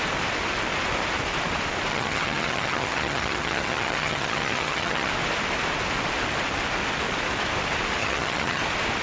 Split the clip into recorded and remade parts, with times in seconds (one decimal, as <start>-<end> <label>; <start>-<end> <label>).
0.0-1.9 recorded; 1.9-5.1 remade; 5.1-8.0 recorded; 8.0-8.6 remade; 8.6-9.0 recorded